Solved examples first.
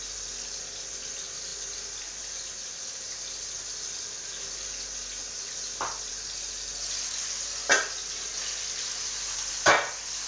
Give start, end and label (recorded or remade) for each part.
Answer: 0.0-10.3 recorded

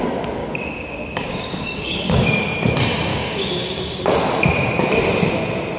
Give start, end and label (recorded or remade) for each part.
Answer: 0.0-0.4 recorded; 0.4-2.4 remade; 2.4-3.1 recorded; 3.1-4.1 remade; 4.1-5.8 recorded

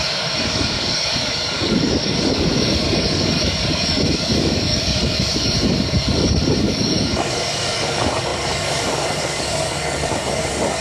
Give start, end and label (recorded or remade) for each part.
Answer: 0.0-10.8 remade

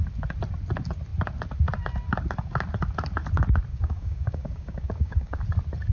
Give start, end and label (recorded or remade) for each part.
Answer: 0.0-3.7 recorded; 3.7-5.4 remade; 5.4-5.9 recorded

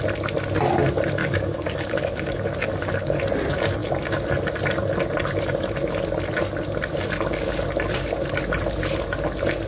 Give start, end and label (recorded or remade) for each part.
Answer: 0.0-1.2 recorded; 1.2-3.2 remade; 3.2-9.7 recorded

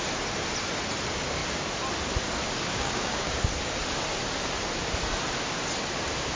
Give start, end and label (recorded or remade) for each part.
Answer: 0.0-2.7 recorded; 2.7-3.4 remade; 3.4-6.4 recorded

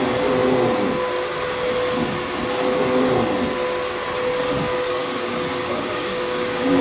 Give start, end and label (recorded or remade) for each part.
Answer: 0.0-5.0 recorded; 5.0-6.8 remade